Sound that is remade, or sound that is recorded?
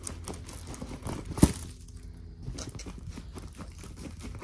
recorded